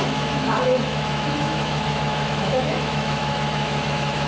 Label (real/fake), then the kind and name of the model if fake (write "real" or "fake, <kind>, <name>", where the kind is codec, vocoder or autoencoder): fake, autoencoder, DAC-VAE